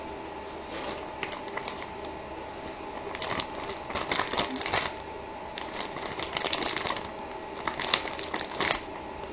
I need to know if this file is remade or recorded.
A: recorded